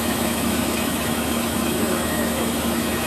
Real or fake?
fake